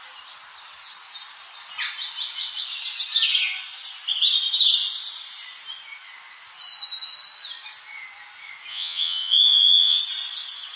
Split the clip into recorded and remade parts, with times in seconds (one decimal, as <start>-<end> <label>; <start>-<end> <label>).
0.0-8.7 recorded; 8.7-10.0 remade; 10.0-10.8 recorded